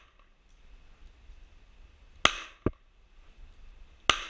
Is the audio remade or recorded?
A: recorded